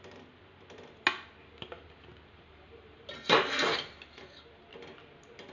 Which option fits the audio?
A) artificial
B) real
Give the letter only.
B